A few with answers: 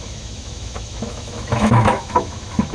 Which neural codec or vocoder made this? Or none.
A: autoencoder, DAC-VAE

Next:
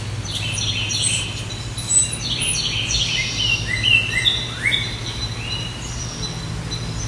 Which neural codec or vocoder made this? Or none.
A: none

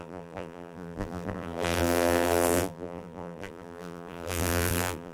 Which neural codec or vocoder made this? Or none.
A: vocoder, BigVGAN v2